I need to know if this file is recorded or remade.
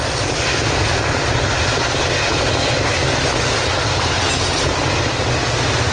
recorded